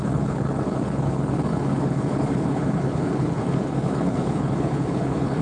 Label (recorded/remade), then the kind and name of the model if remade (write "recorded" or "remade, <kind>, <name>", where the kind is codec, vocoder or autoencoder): remade, codec, HILCodec